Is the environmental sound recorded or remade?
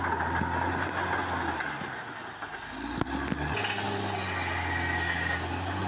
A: recorded